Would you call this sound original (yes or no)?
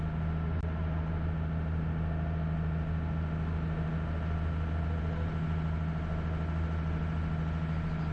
yes